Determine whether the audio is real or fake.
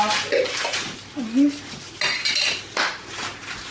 real